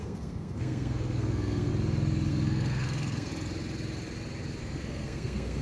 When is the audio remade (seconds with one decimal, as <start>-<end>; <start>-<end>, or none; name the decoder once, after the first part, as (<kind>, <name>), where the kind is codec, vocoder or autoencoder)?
0.0-1.7 (codec, SNAC); 2.3-3.3; 4.6-5.6